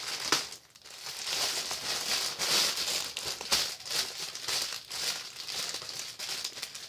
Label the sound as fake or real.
real